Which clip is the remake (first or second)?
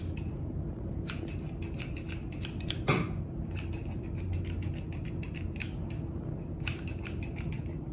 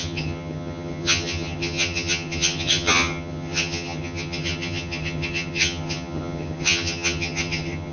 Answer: second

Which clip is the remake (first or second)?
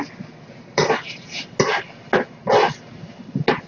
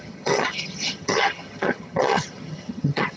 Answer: second